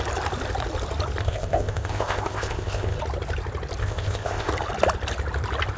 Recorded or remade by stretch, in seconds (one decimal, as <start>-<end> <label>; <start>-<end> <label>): 0.0-1.2 recorded; 1.2-3.0 remade; 3.0-3.8 recorded; 3.8-4.5 remade; 4.5-5.8 recorded